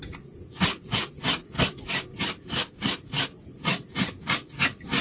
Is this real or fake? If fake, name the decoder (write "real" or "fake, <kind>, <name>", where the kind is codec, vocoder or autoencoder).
real